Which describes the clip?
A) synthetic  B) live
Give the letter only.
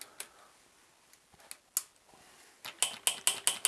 B